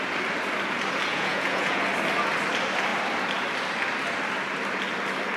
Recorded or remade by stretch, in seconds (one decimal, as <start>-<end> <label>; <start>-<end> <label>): 0.0-1.1 recorded; 1.1-1.8 remade; 1.8-5.4 recorded